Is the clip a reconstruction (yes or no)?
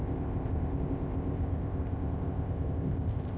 yes